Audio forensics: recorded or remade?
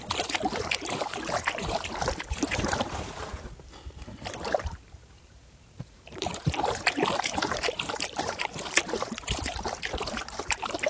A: remade